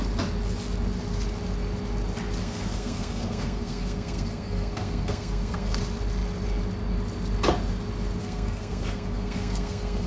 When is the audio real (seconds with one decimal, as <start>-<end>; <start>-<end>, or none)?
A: 0.0-2.4; 5.8-8.2